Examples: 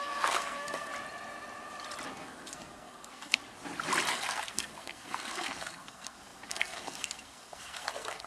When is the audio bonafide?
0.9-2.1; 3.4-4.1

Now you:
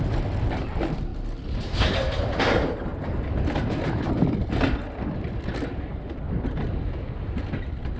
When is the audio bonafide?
0.0-8.0

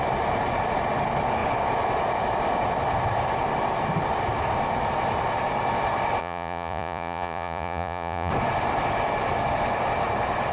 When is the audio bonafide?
0.0-6.2; 8.3-10.5

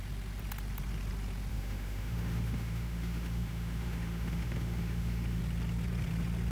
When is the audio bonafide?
0.0-1.5; 5.4-6.5

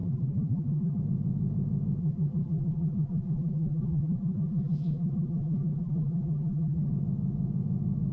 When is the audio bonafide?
1.0-2.0; 6.9-8.1

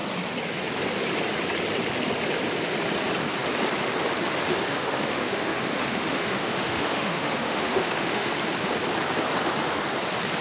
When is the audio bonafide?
0.0-4.5; 8.3-10.4